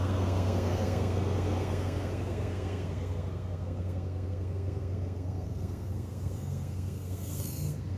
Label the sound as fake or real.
fake